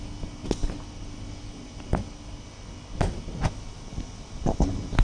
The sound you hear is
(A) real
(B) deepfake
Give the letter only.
A